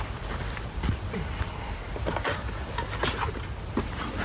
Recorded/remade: recorded